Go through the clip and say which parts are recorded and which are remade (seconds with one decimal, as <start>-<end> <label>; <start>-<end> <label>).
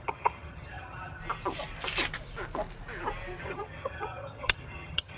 0.0-1.2 remade; 1.2-3.4 recorded; 3.4-5.2 remade